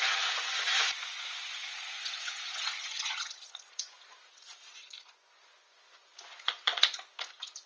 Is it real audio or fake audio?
fake